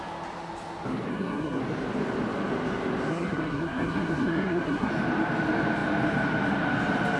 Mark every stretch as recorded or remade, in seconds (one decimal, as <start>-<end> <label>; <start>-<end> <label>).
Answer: 0.0-1.1 recorded; 1.1-1.6 remade; 1.6-3.1 recorded; 3.1-4.9 remade; 4.9-7.2 recorded